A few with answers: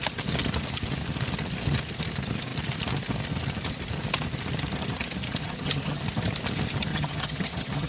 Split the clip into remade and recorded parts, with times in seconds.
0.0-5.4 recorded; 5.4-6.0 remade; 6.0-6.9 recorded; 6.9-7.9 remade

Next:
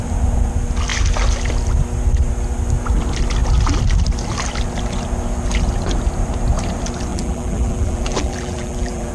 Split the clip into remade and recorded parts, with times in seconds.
0.0-7.1 recorded; 7.1-9.1 remade